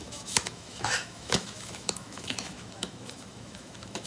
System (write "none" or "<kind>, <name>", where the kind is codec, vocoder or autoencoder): autoencoder, DAC-VAE